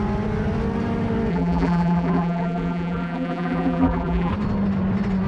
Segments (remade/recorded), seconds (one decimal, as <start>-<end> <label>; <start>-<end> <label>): 0.0-1.3 recorded; 1.3-4.3 remade; 4.3-5.3 recorded